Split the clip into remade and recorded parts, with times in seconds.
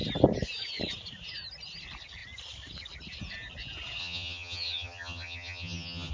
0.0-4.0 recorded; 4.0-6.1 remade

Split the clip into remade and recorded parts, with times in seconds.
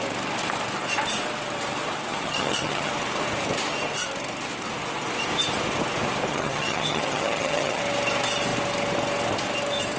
0.0-2.1 recorded; 2.1-2.9 remade; 2.9-6.3 recorded; 6.3-7.8 remade; 7.8-10.0 recorded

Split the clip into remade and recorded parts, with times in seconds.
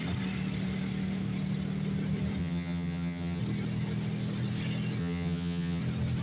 0.0-2.4 recorded; 2.4-3.4 remade; 3.4-5.0 recorded; 5.0-5.8 remade; 5.8-6.2 recorded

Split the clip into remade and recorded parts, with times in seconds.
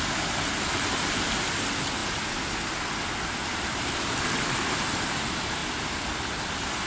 0.0-6.9 recorded